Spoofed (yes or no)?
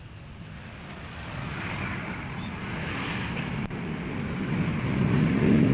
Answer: no